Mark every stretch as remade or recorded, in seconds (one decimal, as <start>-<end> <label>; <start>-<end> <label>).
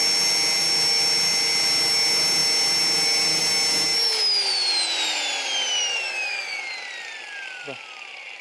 0.0-5.9 recorded; 5.9-6.6 remade; 6.6-8.4 recorded